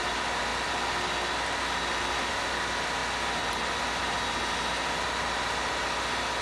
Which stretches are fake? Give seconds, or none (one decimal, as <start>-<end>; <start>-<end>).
none

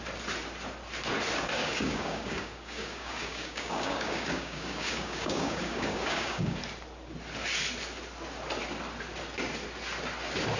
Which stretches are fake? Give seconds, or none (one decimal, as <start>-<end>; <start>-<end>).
1.6-6.6

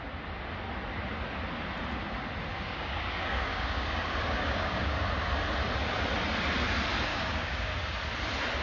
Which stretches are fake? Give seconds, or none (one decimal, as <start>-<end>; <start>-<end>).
2.5-5.0; 7.1-8.0

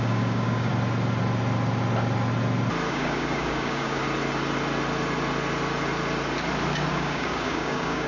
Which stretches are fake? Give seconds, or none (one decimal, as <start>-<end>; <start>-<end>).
0.0-0.7; 2.9-4.0; 6.9-8.1

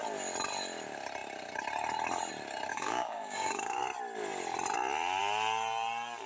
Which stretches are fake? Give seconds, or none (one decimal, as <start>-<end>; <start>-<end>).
2.7-3.8

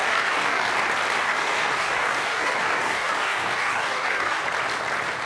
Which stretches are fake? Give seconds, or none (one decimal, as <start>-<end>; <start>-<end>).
0.0-0.7; 1.2-4.4

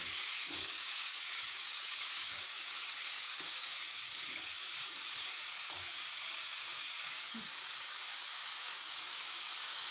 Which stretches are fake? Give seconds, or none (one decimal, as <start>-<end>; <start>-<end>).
0.0-9.9